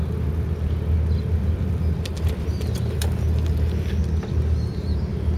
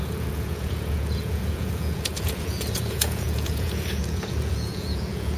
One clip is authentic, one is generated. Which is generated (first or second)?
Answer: second